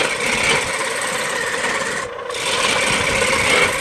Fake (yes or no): no